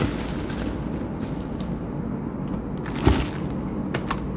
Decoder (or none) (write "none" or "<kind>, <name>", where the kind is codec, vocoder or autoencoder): none